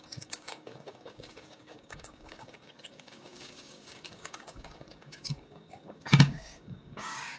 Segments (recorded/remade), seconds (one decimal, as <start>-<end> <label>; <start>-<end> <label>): 0.0-7.4 remade